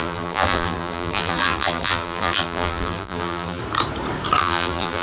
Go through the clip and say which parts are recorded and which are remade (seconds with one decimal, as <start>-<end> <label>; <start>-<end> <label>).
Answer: 0.0-3.6 remade; 3.6-4.4 recorded; 4.4-5.0 remade